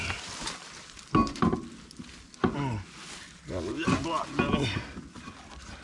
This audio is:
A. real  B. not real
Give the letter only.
A